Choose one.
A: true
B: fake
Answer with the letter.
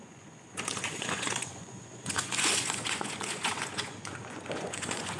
B